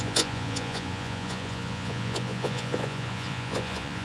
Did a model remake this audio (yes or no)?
yes